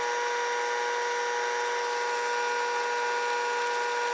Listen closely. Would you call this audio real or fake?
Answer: real